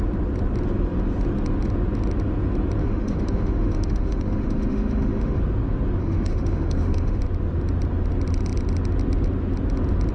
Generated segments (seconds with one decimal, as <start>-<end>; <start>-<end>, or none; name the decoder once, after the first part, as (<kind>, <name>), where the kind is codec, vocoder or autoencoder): 2.8-5.4 (autoencoder, DAC-VAE); 6.0-7.2